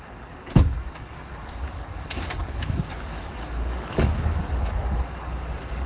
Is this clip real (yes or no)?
no